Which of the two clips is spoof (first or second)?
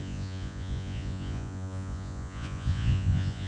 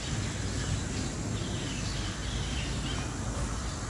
first